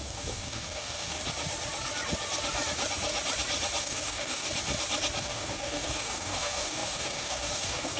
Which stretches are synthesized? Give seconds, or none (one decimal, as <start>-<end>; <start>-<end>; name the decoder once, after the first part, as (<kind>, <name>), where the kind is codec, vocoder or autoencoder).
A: 0.0-1.2 (codec, DAC); 3.8-4.5; 5.2-8.0